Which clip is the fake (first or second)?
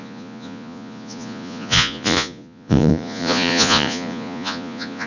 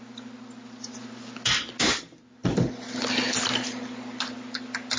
first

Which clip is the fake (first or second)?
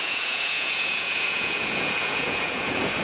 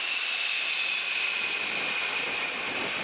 first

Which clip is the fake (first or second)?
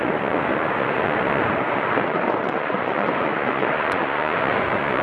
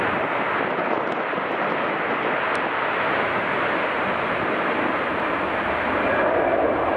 first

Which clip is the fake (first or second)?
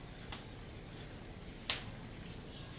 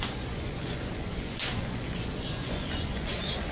second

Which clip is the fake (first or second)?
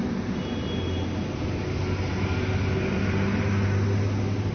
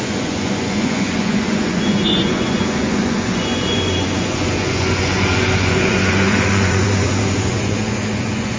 second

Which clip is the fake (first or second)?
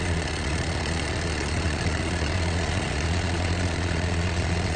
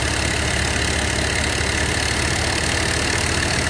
first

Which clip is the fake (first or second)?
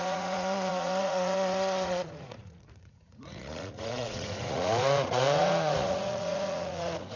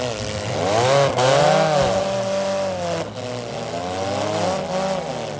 first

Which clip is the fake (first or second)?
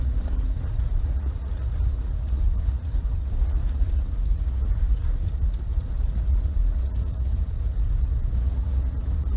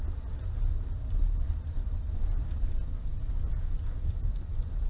first